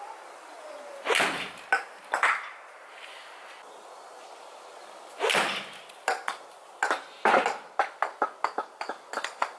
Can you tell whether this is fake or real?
real